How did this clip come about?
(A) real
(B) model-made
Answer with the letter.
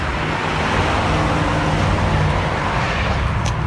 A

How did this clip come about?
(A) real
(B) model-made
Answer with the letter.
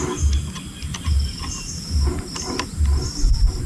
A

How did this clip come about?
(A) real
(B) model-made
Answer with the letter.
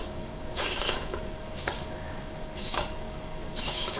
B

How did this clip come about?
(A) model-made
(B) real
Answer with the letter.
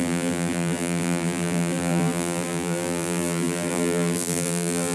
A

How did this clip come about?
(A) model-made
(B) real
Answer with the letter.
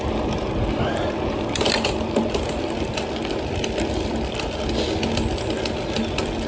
B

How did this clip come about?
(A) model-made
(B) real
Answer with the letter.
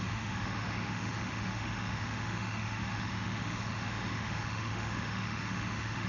A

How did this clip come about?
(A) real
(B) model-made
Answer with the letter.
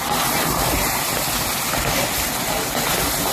A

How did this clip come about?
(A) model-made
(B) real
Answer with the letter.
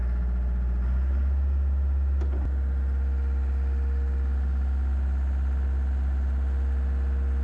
B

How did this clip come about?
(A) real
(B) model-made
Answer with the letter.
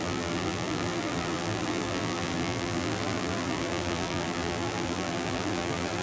B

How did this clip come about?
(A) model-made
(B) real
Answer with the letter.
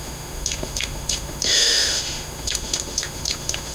A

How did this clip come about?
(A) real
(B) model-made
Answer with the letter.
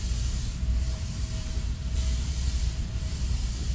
B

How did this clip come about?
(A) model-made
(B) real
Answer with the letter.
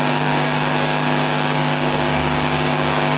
A